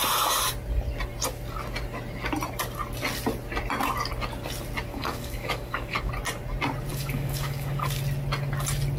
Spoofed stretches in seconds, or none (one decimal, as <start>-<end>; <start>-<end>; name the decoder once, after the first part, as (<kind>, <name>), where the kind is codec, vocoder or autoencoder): 4.9-6.1 (codec, DAC); 6.9-8.0